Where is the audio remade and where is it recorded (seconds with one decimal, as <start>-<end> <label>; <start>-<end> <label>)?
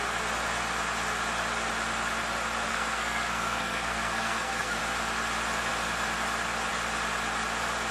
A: 0.0-2.7 recorded; 2.7-4.8 remade; 4.8-7.9 recorded